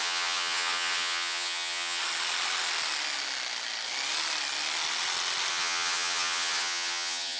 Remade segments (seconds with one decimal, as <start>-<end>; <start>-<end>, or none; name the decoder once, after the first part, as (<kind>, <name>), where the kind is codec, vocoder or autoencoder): 0.0-2.0 (vocoder, HiFi-GAN); 5.5-7.4